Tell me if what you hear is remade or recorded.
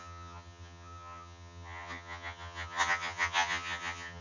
remade